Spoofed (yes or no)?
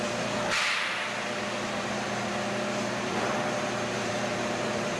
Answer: yes